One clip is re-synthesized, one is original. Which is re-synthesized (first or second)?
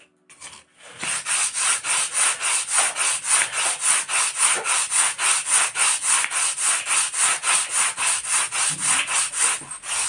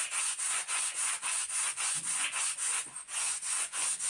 second